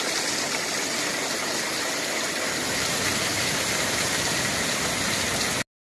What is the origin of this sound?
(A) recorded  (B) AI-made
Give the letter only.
A